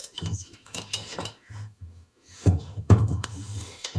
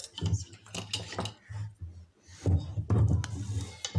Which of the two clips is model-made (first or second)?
first